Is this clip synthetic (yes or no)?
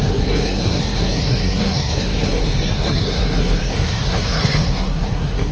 yes